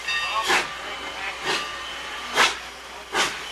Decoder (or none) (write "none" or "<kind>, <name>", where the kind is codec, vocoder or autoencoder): none